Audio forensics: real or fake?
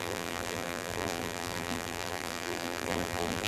fake